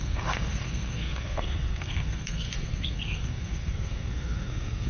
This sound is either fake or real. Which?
fake